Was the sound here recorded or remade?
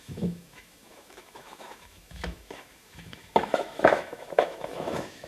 remade